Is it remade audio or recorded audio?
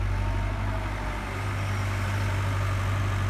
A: recorded